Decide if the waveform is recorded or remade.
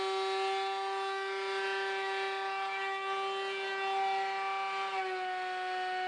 recorded